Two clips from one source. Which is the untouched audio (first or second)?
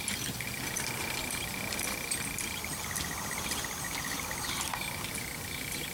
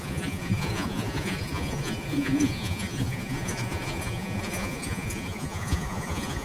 first